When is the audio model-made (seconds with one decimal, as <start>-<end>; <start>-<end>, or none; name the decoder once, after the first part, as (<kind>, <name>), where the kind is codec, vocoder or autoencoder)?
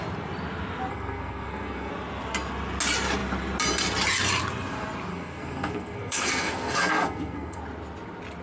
0.9-1.9 (codec, SNAC); 5.1-7.6